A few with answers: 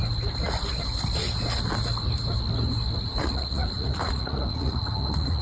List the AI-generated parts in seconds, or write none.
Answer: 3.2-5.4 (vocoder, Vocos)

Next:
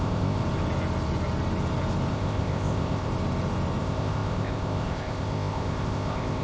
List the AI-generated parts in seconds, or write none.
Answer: 0.0-0.4 (codec, ZipCodec); 2.1-3.1; 3.8-6.4